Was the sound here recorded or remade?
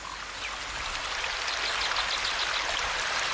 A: recorded